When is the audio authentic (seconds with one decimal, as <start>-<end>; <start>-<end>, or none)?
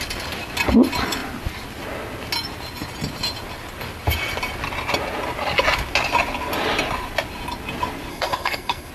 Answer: 0.0-8.1